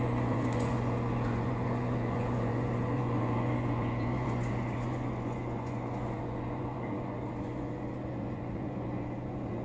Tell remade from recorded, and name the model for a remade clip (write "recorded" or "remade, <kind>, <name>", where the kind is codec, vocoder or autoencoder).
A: remade, vocoder, Vocos